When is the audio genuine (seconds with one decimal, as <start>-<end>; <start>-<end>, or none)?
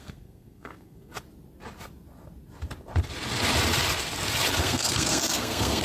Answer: 1.1-4.6